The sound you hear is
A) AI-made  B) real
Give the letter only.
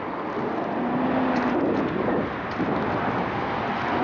B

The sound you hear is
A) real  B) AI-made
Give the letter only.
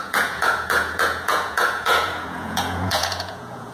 B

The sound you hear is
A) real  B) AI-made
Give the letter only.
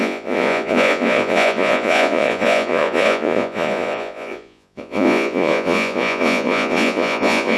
B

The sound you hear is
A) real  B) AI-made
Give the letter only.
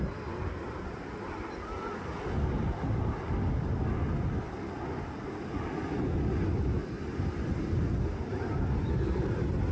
A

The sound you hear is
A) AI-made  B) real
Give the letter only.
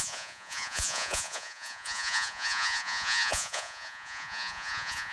A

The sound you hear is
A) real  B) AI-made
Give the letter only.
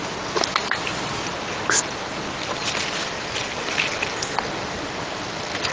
A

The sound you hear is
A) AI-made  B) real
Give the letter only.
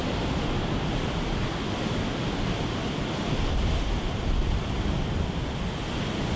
B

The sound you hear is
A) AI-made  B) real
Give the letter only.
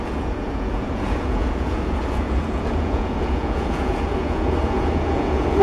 A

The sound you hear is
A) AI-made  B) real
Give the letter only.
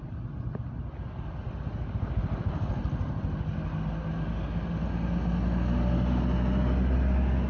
B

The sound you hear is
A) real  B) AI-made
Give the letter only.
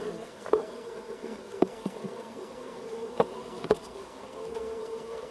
B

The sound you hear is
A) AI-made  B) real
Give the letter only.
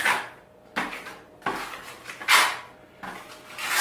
B